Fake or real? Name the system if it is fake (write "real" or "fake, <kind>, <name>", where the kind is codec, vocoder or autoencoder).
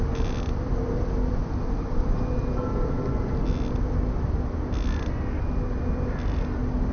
real